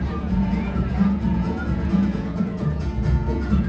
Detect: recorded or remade remade